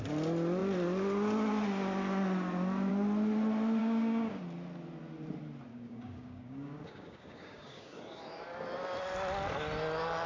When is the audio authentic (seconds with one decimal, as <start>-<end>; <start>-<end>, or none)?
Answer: 0.0-3.8; 4.4-5.7; 8.0-10.3